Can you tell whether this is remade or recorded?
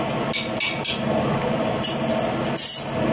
recorded